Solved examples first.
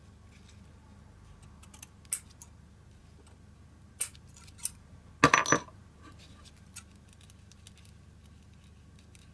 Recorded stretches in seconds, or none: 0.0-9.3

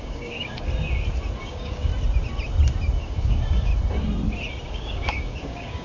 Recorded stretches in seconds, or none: 0.7-1.4; 1.9-3.0; 3.7-4.6

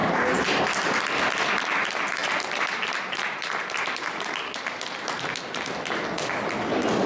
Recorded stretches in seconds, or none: 0.6-2.2; 4.7-7.1

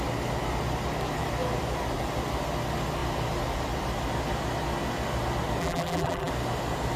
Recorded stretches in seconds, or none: 0.0-5.6; 6.3-7.0

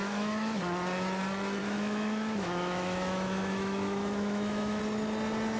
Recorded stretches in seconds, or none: 0.6-1.6; 4.8-5.6

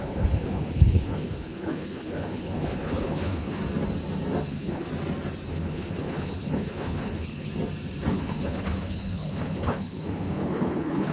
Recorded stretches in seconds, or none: 3.6-4.5; 4.9-5.5; 7.5-8.1

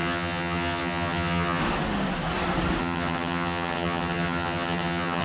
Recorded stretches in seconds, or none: 1.6-2.8

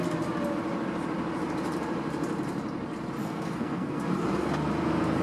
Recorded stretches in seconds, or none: 0.0-3.2; 4.0-5.2